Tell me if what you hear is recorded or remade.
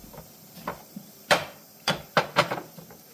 remade